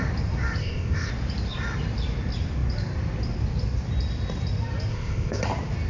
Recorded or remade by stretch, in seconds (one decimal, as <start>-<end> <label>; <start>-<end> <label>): 0.0-0.6 recorded; 0.6-1.1 remade; 1.1-4.9 recorded; 4.9-5.4 remade; 5.4-5.9 recorded